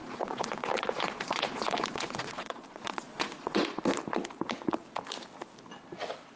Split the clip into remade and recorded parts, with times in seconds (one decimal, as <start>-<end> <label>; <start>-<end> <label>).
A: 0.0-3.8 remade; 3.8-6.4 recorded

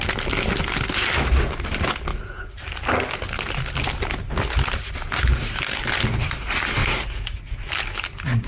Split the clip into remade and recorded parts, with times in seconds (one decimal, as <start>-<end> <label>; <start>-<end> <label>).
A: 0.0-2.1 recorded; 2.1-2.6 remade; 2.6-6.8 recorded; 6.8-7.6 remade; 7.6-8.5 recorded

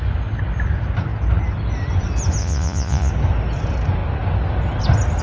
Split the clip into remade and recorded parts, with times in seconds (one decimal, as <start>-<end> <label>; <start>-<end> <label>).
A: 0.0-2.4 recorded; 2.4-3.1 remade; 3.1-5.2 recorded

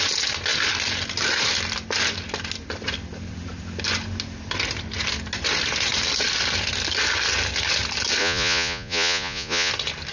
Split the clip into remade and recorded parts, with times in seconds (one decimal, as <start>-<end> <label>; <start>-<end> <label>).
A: 0.0-8.2 recorded; 8.2-9.7 remade; 9.7-10.1 recorded

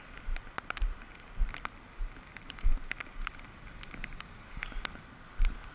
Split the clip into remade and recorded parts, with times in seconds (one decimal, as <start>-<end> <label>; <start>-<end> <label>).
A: 0.0-5.7 recorded

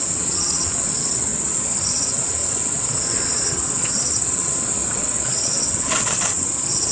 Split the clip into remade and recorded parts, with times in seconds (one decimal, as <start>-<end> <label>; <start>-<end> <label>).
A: 0.0-6.9 remade

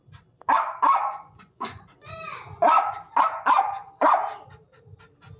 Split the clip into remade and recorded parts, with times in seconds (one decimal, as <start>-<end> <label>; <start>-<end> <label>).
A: 0.0-1.0 recorded; 1.0-1.8 remade; 1.8-5.4 recorded

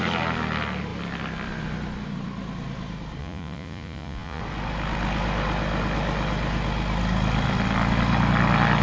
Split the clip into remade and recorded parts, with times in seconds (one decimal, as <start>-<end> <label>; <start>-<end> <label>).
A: 0.0-3.2 recorded; 3.2-4.4 remade; 4.4-8.8 recorded